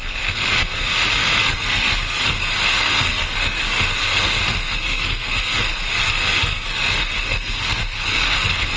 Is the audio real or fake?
fake